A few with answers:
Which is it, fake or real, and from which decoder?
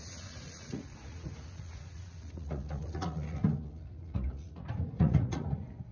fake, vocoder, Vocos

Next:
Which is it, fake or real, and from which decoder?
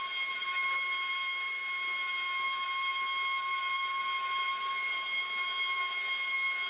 real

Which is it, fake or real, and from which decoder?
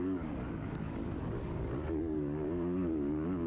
fake, codec, DAC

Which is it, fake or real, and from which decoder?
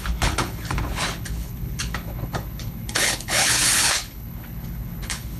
fake, codec, HILCodec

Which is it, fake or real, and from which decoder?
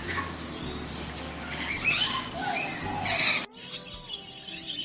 real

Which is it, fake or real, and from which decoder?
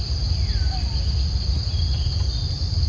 real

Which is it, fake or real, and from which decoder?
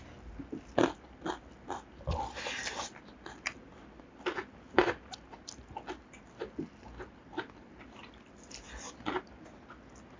real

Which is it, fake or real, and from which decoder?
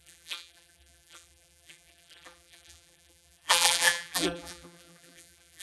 fake, vocoder, BigVGAN v2